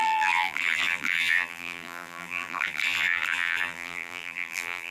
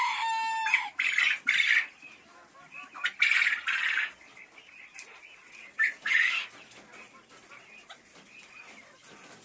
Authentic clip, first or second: second